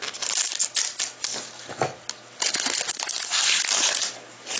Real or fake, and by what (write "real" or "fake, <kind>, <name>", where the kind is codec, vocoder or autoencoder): real